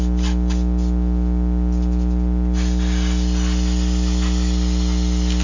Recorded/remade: recorded